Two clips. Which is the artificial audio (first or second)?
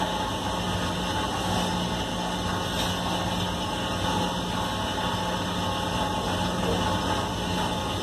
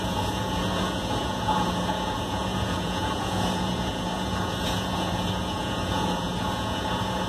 second